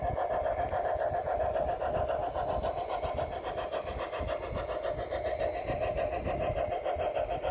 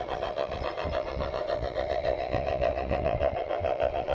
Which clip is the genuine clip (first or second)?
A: first